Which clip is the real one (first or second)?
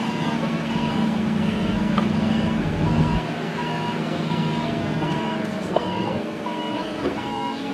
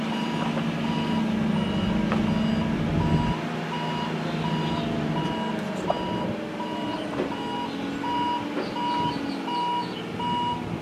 second